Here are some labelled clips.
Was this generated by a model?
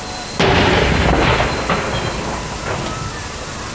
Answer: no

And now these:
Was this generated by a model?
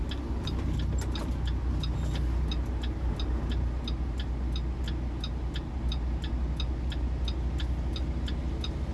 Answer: no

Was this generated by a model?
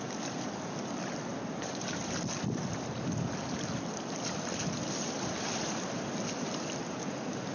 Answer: no